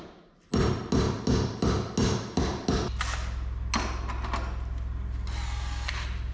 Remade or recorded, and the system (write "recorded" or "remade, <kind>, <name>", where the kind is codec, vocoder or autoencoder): recorded